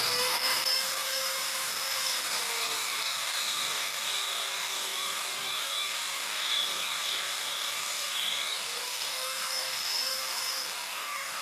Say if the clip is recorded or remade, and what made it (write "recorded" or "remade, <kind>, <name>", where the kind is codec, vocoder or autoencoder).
remade, codec, DAC